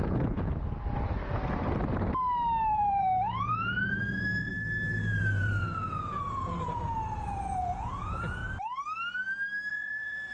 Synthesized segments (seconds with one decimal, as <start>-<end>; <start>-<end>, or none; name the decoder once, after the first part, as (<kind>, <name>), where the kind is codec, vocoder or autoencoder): 0.0-0.5 (vocoder, Vocos); 2.7-4.5; 5.2-8.4; 9.7-10.3